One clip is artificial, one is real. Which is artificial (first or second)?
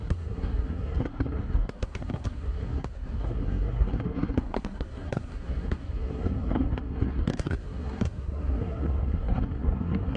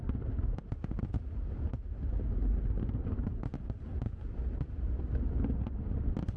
first